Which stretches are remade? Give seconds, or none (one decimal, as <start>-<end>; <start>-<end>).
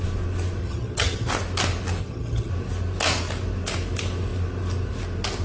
0.6-1.3; 2.0-2.5